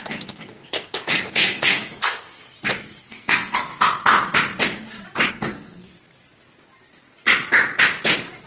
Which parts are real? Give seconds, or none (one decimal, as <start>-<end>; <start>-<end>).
2.4-3.0; 3.7-5.3; 5.9-8.5